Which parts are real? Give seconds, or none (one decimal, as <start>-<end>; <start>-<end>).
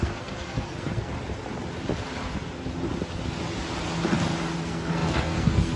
1.1-4.6